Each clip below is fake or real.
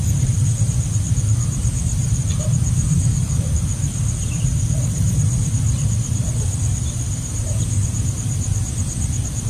fake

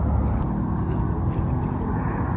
real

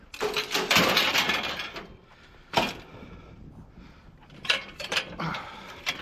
real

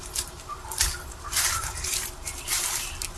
fake